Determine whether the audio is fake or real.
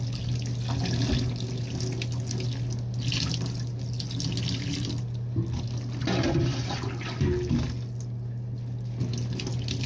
real